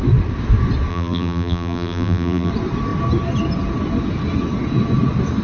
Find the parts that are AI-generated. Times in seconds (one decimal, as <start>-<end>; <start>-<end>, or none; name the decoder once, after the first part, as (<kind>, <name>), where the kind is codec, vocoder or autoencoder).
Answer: 0.9-2.5 (vocoder, BigVGAN v2)